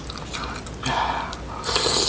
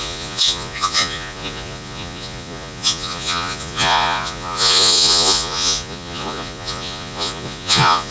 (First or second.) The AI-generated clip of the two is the second